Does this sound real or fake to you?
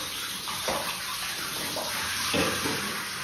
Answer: real